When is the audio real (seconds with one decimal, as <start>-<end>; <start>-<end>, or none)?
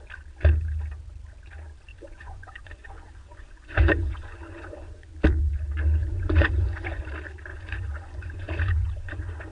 0.0-1.9; 5.1-6.0; 7.0-7.5